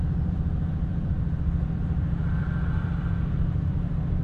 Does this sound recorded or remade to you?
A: remade